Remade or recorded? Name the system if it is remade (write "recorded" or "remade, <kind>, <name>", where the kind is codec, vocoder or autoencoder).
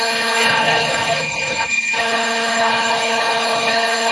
remade, codec, HILCodec